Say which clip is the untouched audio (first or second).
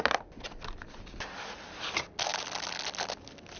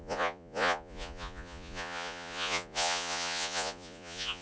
first